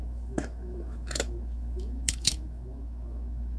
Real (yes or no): no